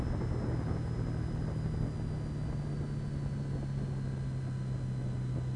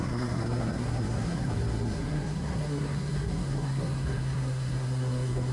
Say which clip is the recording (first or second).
first